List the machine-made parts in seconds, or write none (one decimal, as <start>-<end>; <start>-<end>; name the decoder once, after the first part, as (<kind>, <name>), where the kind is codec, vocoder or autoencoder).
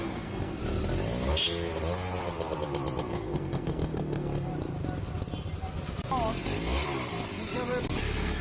0.0-0.6 (codec, SNAC); 3.0-4.5; 8.0-8.4